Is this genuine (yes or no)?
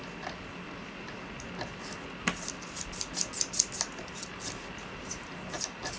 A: yes